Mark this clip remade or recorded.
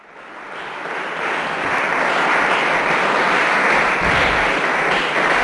recorded